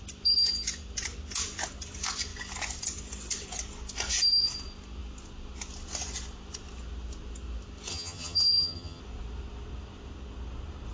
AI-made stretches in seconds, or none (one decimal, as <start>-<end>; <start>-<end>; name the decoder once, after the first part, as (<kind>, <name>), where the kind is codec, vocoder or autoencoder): 7.9-9.0 (vocoder, HiFi-GAN)